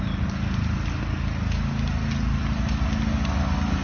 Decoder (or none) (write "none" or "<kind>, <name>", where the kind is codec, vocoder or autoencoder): none